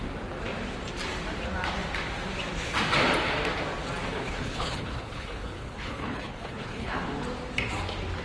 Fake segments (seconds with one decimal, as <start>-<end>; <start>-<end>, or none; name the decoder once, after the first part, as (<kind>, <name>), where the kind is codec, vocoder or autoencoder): 4.1-7.0 (codec, HILCodec)